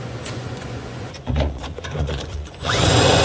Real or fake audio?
fake